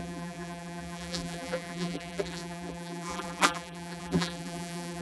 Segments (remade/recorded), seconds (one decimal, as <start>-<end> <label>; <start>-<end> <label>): 0.0-5.0 remade